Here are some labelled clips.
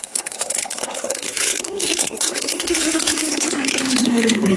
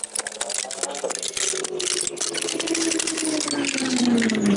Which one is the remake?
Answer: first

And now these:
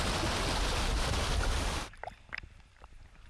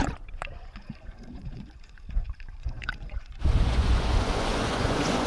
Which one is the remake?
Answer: second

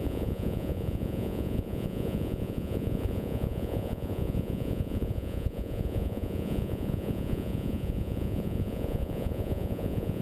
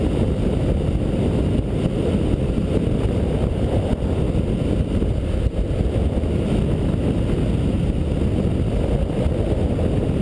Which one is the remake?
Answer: first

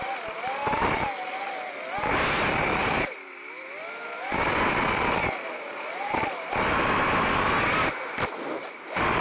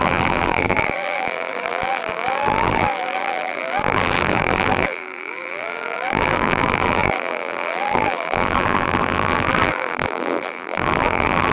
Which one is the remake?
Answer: second